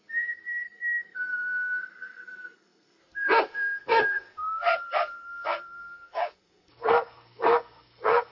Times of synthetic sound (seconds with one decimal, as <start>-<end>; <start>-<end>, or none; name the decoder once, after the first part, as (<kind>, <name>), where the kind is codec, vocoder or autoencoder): 0.0-8.3 (codec, SNAC)